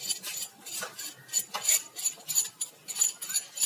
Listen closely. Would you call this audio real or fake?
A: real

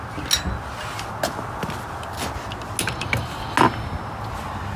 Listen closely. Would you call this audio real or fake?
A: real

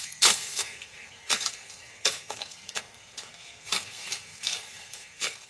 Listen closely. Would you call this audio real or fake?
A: fake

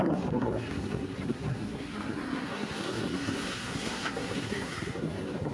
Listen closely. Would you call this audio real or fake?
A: fake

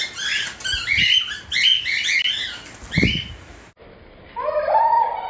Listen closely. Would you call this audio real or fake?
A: real